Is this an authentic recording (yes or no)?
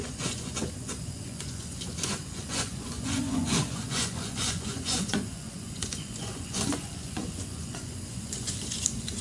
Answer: no